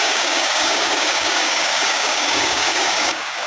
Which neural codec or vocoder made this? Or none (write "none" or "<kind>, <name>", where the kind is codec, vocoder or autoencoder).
codec, DAC